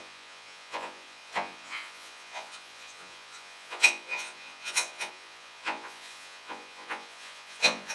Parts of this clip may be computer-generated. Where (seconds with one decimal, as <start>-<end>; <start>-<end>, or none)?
0.0-7.9